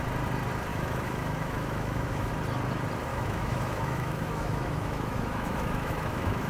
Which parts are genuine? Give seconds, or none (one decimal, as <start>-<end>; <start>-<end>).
0.0-0.7; 2.3-3.1